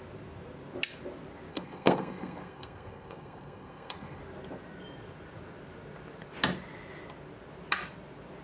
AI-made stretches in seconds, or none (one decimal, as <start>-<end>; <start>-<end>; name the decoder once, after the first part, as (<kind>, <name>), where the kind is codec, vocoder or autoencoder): 1.5-4.2 (codec, SNAC)